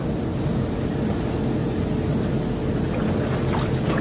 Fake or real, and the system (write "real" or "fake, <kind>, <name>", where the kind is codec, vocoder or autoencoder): real